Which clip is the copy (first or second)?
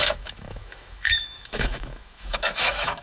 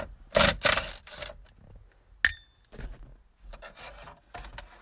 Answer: first